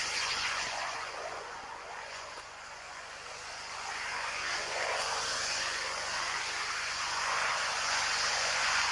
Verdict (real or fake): fake